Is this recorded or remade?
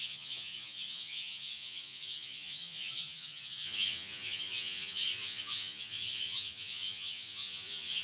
remade